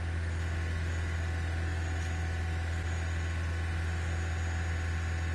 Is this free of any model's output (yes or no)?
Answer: yes